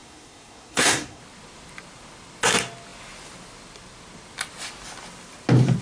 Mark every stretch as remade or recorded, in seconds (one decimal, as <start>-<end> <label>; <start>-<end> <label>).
0.0-1.2 remade; 1.2-5.8 recorded